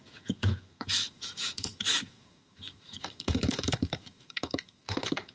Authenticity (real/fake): fake